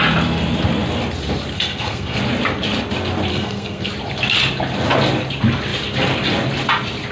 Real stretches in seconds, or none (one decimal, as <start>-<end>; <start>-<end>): 0.0-1.5; 2.2-3.3; 3.9-7.1